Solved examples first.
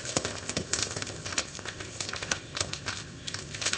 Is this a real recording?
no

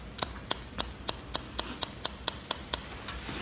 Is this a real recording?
yes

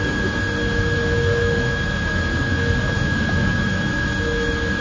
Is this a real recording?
no